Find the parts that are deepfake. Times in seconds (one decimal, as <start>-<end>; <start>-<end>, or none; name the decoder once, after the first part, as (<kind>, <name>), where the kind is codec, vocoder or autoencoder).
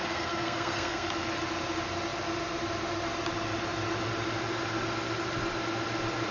0.0-1.1 (codec, SNAC)